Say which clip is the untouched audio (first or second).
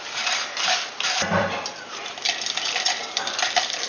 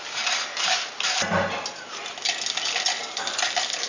second